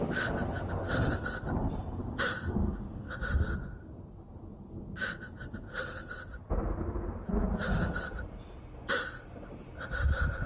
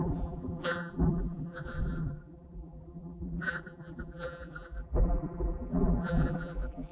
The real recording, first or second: first